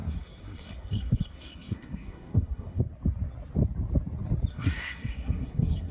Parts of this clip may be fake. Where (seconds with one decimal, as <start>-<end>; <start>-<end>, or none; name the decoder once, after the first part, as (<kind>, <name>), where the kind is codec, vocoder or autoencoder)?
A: 0.0-2.8 (codec, SNAC); 4.5-5.9